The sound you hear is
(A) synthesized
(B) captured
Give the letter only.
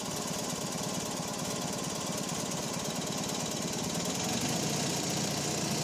B